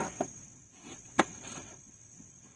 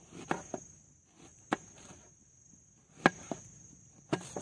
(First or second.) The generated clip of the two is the first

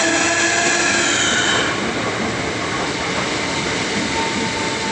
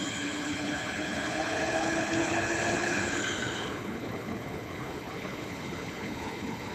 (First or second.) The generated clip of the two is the second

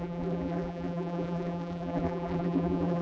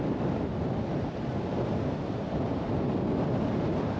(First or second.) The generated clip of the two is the first